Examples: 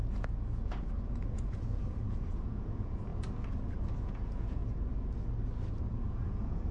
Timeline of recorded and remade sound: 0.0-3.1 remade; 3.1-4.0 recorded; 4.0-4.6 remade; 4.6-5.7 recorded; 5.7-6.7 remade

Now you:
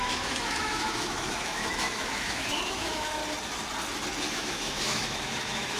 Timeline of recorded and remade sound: 0.0-3.2 remade; 3.2-4.3 recorded; 4.3-5.8 remade

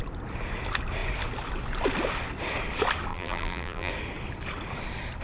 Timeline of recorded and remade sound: 0.0-3.1 recorded; 3.1-3.9 remade; 3.9-5.2 recorded

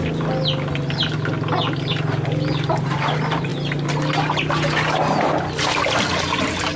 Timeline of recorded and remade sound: 0.0-6.8 recorded